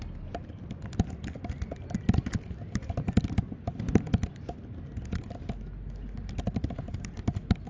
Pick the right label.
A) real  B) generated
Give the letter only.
A